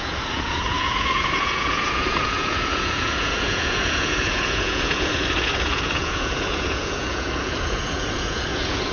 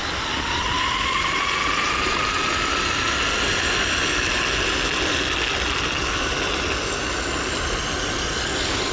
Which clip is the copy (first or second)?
first